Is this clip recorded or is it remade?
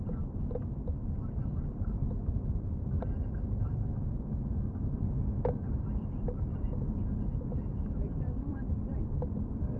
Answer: remade